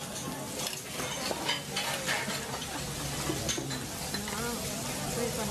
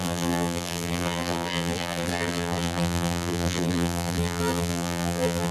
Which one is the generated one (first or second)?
second